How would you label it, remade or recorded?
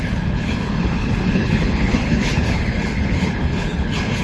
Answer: remade